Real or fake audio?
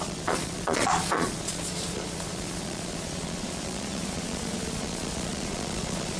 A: fake